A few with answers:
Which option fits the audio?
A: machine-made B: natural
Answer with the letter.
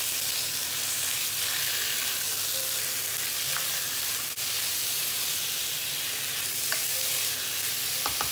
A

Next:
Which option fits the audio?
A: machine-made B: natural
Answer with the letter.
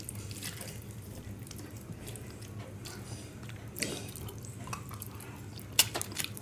B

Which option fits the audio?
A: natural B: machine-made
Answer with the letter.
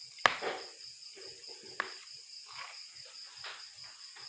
A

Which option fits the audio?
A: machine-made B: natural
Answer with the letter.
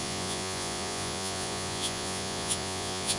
A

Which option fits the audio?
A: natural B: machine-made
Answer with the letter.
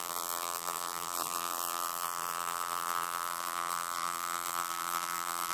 B